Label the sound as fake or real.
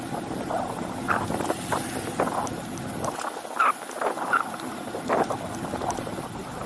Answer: real